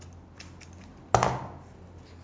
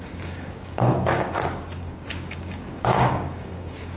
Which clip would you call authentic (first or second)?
first